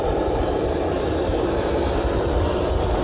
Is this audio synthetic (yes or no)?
no